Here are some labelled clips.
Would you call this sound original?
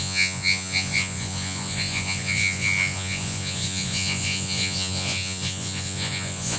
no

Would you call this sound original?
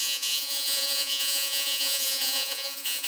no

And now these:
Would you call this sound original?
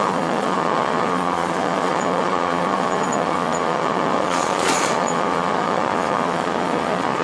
no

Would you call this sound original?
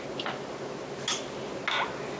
yes